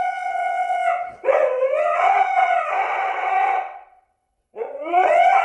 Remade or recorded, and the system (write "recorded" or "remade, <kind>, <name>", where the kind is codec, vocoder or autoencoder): remade, vocoder, WaveNeXt